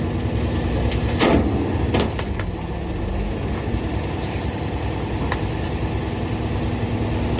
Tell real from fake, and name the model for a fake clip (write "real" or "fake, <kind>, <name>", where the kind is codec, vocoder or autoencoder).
real